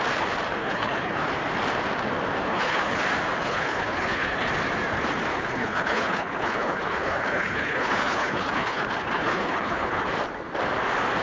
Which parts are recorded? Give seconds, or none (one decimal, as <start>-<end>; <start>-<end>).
0.0-0.6; 1.3-2.4; 3.0-3.4; 4.5-5.3; 10.0-11.2